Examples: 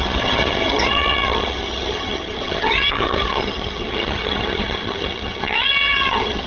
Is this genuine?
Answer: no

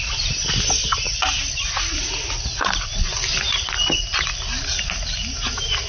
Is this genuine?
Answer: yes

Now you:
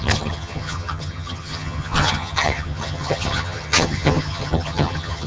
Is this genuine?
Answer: no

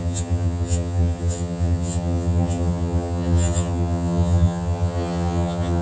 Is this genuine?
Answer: no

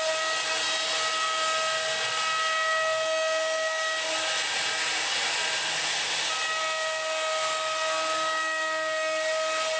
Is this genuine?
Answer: yes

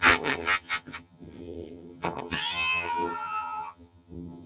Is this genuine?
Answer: no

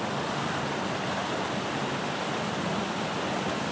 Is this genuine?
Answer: yes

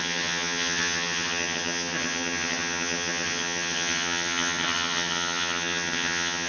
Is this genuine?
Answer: no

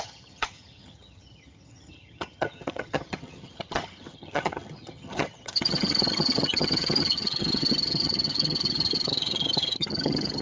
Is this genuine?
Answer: no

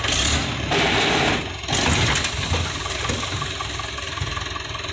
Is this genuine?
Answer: yes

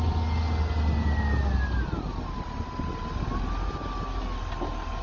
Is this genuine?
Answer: yes